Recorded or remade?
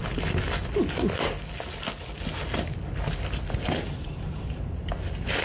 recorded